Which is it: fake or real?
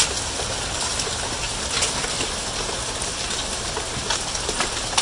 real